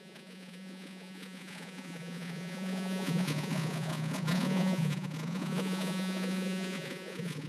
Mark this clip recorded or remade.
remade